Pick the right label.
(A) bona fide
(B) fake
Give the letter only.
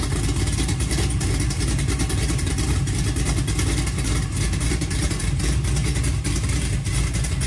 B